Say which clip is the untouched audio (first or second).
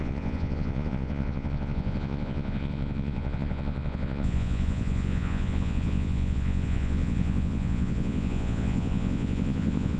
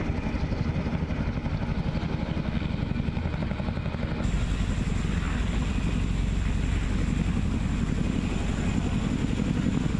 second